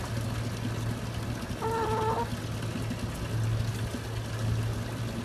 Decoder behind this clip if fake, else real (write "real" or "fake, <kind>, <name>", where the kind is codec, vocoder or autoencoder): real